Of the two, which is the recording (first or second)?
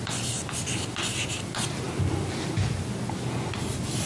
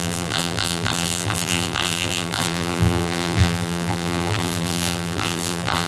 first